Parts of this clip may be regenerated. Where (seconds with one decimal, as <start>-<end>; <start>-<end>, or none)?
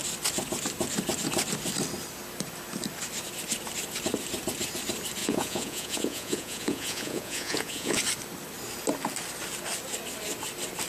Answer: 5.2-8.0